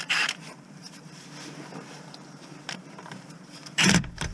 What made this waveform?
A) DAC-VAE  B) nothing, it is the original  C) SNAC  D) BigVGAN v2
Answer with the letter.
D